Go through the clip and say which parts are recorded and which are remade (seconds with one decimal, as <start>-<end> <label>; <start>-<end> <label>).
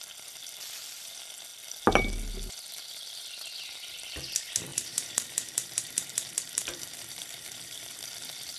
0.0-4.7 recorded; 4.7-7.8 remade; 7.8-8.6 recorded